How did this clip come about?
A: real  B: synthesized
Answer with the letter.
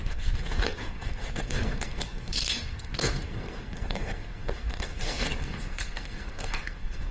B